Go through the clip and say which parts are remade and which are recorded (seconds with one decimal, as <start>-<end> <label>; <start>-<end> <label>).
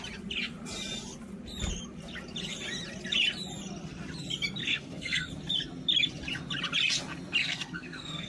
0.0-4.6 recorded; 4.6-5.3 remade; 5.3-7.4 recorded; 7.4-8.3 remade